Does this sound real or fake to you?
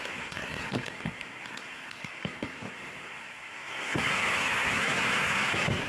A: fake